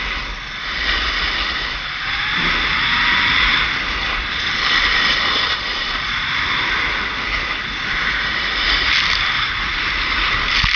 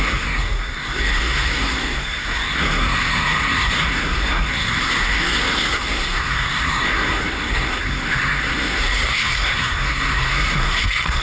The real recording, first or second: first